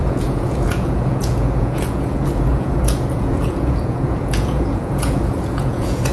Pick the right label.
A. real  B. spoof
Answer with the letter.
B